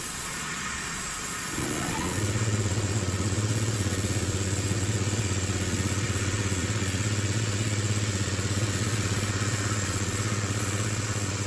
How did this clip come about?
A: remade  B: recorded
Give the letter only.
A